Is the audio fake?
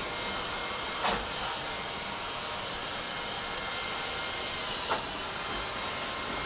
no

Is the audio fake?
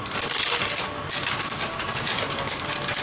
no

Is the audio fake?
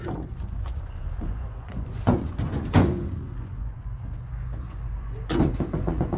yes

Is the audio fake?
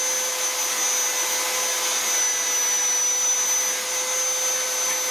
no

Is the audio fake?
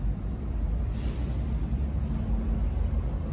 no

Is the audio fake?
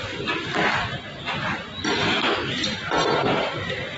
no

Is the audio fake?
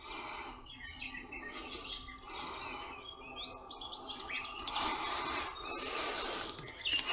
no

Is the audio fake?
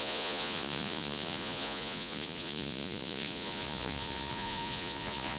yes